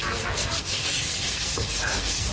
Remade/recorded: remade